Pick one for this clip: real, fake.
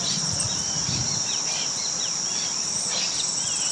real